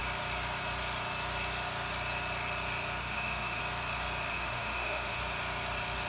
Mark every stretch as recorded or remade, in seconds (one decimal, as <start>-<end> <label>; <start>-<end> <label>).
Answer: 0.0-3.0 recorded; 3.0-3.6 remade; 3.6-4.3 recorded; 4.3-5.2 remade; 5.2-6.1 recorded